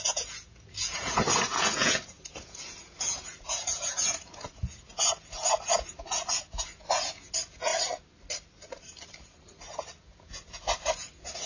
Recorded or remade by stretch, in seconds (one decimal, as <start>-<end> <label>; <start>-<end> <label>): 0.0-7.7 remade; 7.7-9.6 recorded; 9.6-11.5 remade